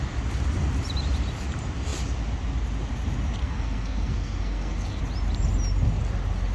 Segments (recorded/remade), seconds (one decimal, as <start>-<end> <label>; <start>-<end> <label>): 0.0-3.4 recorded; 3.4-5.0 remade; 5.0-6.5 recorded